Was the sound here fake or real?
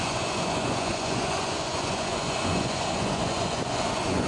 fake